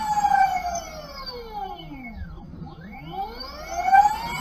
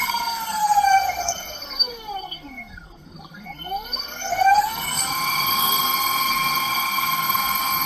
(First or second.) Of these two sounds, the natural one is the first